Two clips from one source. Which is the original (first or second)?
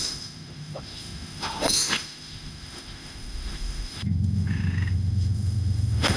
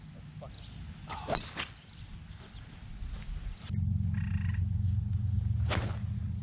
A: second